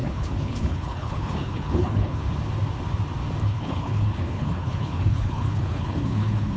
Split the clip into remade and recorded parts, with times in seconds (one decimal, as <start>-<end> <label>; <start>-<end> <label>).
0.0-2.2 remade; 2.2-3.4 recorded; 3.4-6.6 remade